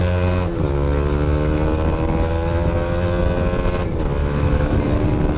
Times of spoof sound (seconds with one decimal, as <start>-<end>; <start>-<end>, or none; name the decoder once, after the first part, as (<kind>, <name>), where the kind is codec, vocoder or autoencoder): 4.2-4.8 (autoencoder, DAC-VAE)